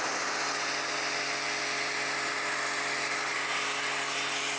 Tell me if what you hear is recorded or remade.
recorded